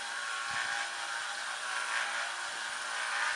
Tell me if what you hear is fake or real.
real